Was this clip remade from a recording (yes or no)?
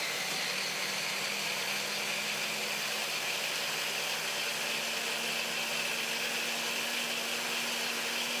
no